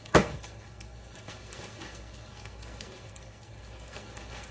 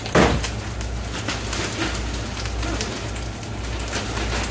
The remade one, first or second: first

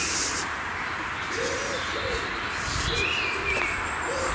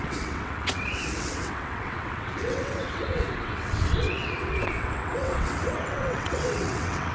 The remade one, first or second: second